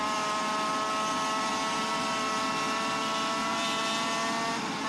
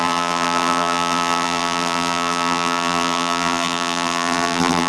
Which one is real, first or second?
first